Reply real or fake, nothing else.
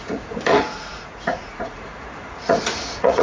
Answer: fake